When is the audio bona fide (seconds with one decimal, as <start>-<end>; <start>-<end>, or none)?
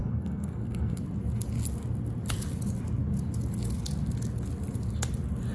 1.0-5.5